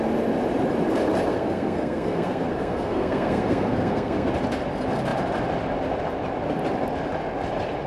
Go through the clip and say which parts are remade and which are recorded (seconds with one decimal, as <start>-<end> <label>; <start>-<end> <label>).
0.0-1.3 recorded; 1.3-4.3 remade; 4.3-7.9 recorded